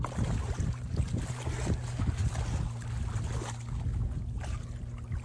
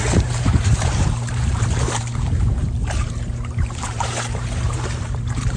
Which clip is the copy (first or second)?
second